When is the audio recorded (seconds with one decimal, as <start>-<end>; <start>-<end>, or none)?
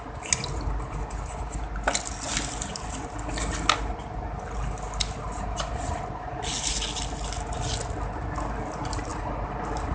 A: 0.0-9.9